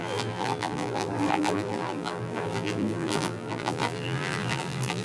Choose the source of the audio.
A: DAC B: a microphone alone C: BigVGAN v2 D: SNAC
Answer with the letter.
C